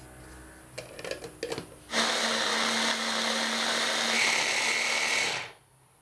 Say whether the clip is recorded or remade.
recorded